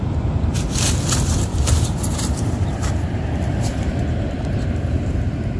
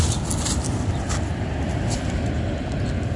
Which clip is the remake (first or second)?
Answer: first